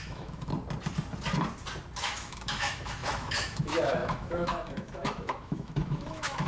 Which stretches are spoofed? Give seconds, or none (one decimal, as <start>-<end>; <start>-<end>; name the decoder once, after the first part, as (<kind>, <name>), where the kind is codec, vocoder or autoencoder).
0.0-0.5 (autoencoder, DAC-VAE); 2.0-6.5